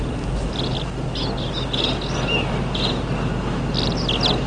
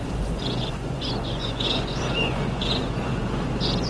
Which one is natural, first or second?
first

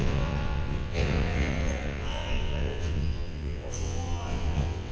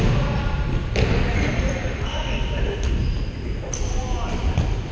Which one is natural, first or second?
second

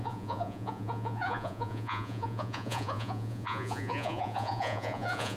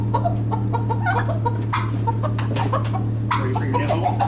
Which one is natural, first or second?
second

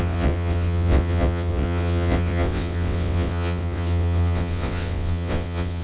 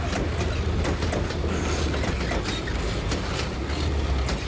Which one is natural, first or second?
second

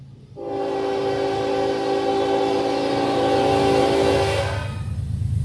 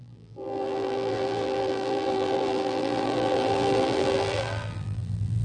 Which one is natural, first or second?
first